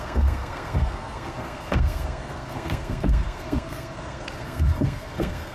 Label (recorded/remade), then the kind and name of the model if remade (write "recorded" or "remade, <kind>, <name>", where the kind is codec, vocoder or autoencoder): remade, codec, SNAC